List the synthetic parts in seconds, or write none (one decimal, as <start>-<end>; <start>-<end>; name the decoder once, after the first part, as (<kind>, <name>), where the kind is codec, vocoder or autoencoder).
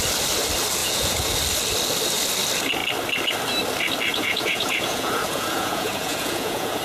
0.8-1.3 (vocoder, Vocos); 4.1-6.8